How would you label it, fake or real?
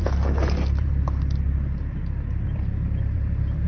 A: fake